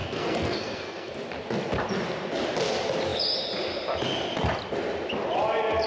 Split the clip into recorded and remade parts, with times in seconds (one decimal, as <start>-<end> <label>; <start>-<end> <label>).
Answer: 0.0-1.1 remade; 1.1-5.9 recorded